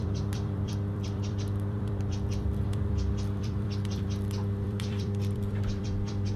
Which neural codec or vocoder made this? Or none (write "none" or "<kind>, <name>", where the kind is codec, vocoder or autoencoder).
vocoder, BigVGAN v2